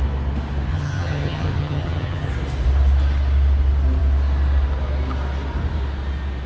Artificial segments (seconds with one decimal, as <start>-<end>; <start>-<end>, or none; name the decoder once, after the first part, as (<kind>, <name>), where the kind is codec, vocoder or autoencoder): 0.7-2.3 (vocoder, HiFi-GAN)